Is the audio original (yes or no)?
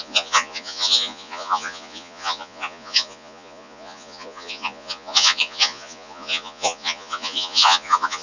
no